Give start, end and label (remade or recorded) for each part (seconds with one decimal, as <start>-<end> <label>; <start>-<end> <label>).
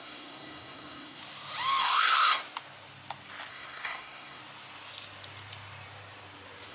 0.0-1.2 remade; 1.2-1.8 recorded; 1.8-2.4 remade; 2.4-3.5 recorded; 3.5-4.4 remade; 4.4-6.7 recorded